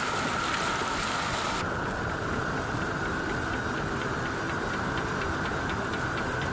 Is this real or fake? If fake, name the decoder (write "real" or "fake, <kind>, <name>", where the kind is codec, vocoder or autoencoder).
real